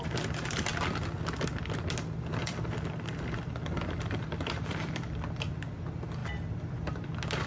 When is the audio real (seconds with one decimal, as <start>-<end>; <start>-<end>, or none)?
0.0-2.4; 5.4-6.2; 7.0-7.5

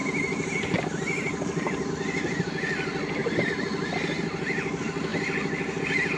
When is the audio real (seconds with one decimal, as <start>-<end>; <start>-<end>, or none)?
1.9-3.2; 3.9-6.2

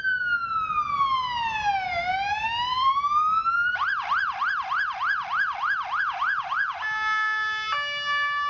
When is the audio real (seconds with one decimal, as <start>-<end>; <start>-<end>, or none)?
0.0-2.7; 6.0-8.5

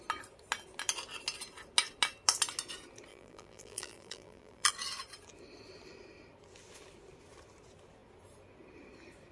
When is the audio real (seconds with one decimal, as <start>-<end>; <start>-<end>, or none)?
0.0-3.1; 4.7-9.3

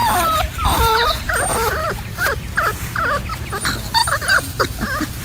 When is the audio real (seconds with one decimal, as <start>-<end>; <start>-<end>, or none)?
1.3-1.8; 2.4-4.0; 4.8-5.2